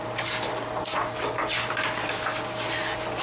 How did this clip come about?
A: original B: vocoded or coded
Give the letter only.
A